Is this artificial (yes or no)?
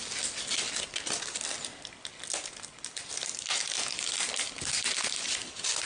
no